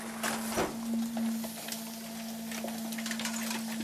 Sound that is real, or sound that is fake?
real